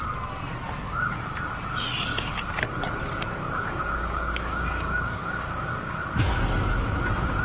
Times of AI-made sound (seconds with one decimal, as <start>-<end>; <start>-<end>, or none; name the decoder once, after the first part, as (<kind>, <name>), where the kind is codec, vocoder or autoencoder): 3.4-6.0 (codec, DAC)